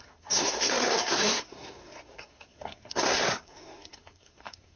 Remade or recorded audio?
remade